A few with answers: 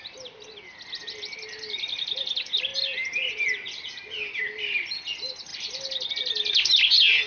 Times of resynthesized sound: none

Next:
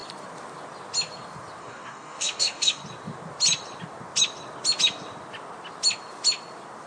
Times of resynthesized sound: 1.6-2.8 (codec, DAC)

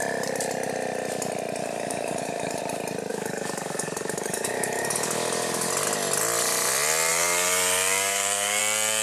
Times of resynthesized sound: 1.6-2.6 (codec, DAC); 3.1-5.7; 7.1-8.6

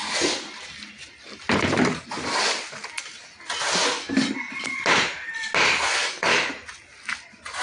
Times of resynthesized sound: 6.0-6.5 (codec, DAC)